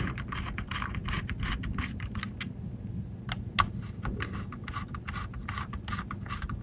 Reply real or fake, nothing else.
real